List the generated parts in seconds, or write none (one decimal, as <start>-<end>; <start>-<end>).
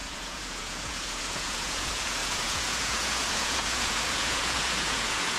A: 0.0-5.4